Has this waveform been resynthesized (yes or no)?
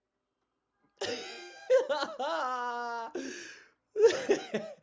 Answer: no